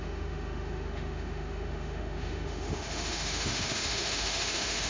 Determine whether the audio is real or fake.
fake